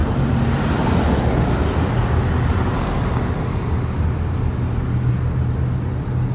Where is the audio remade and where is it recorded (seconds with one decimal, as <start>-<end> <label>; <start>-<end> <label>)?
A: 0.0-0.9 remade; 0.9-6.3 recorded